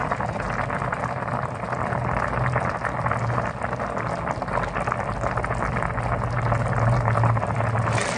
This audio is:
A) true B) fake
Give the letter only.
A